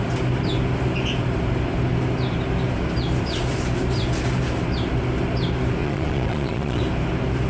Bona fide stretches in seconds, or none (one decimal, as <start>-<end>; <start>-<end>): 0.0-5.8; 6.8-7.5